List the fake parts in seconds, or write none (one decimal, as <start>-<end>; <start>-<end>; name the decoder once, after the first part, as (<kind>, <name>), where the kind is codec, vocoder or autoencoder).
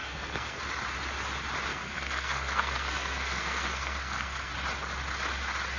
0.0-0.6 (codec, SNAC); 1.7-4.5